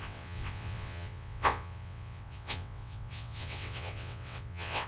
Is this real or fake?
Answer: fake